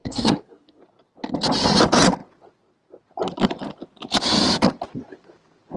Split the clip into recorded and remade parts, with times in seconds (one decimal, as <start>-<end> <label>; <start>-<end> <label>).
0.0-0.8 remade; 0.8-5.8 recorded